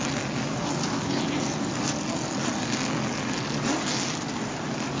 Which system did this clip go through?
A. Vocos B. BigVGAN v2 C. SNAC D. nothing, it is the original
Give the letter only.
D